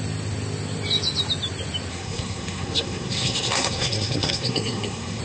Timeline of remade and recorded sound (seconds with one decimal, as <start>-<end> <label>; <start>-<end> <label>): 0.0-1.9 recorded; 1.9-5.2 remade